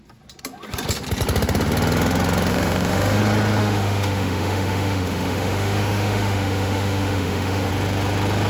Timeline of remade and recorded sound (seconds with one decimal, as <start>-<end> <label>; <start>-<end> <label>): 0.0-2.5 recorded; 2.5-3.2 remade; 3.2-3.6 recorded; 3.6-7.7 remade; 7.7-8.5 recorded